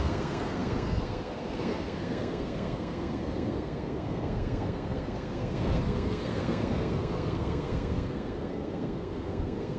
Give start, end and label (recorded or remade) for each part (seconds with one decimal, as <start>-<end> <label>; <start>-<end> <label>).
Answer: 0.0-9.8 remade